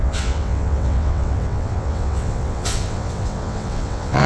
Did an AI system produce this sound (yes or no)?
yes